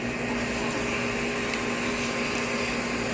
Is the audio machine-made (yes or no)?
no